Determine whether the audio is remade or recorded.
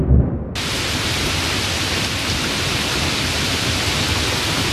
recorded